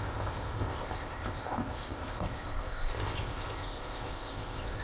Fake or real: fake